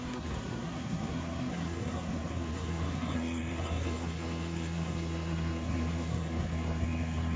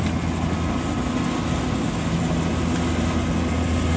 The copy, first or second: first